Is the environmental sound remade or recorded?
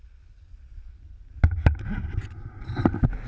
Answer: recorded